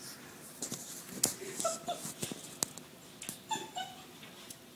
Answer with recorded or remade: recorded